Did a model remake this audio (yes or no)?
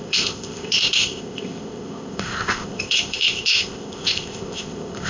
yes